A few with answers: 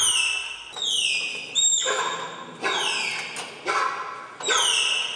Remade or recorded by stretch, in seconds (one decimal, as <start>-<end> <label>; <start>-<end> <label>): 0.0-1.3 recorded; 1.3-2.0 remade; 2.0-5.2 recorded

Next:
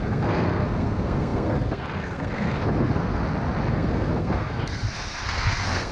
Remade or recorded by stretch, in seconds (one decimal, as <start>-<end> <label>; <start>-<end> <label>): 0.0-3.2 remade; 3.2-3.7 recorded; 3.7-5.9 remade

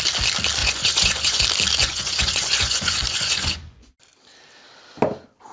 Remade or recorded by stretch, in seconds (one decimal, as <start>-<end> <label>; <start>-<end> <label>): 0.0-0.6 recorded; 0.6-1.4 remade; 1.4-1.8 recorded; 1.8-3.9 remade; 3.9-5.5 recorded

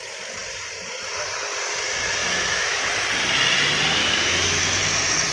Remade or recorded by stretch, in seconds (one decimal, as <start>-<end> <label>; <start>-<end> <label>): 0.0-2.2 recorded; 2.2-2.8 remade; 2.8-4.0 recorded; 4.0-4.6 remade; 4.6-5.3 recorded

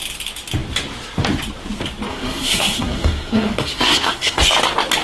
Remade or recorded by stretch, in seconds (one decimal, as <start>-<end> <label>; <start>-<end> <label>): 0.0-2.1 recorded; 2.1-4.4 remade; 4.4-5.0 recorded

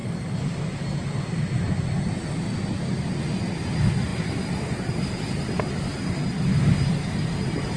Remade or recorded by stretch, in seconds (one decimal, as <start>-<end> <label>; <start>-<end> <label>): 0.0-7.8 recorded

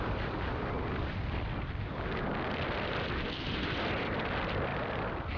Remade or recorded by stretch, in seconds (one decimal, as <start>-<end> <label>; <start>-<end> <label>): 0.0-5.4 recorded